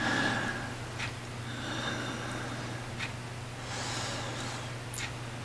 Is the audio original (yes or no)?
yes